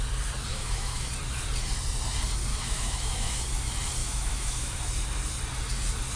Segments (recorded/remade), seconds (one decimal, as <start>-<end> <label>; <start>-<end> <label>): 0.0-0.5 recorded; 0.5-1.1 remade; 1.1-2.5 recorded; 2.5-3.4 remade; 3.4-4.0 recorded; 4.0-4.8 remade; 4.8-6.2 recorded